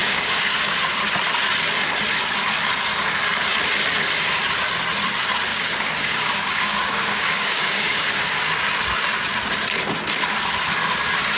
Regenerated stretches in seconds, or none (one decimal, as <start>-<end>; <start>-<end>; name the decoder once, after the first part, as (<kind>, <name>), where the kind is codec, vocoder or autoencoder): 0.0-0.6 (codec, DAC); 5.5-8.2